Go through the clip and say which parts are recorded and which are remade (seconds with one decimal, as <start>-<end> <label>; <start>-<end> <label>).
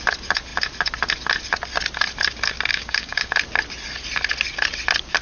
0.0-2.7 recorded; 2.7-3.3 remade; 3.3-5.2 recorded